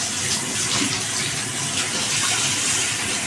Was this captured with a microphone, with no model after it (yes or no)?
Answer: yes